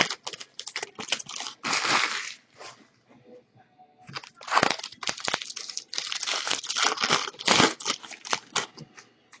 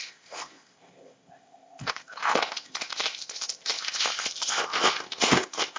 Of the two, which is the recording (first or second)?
first